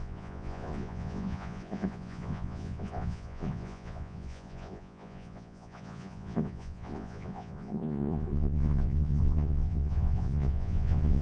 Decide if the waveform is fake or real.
fake